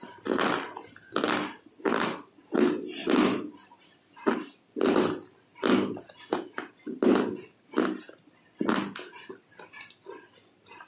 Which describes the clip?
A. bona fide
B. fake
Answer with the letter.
A